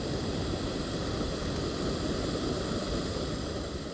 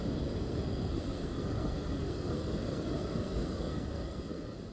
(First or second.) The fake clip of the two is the second